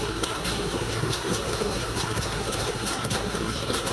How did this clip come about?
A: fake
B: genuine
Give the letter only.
A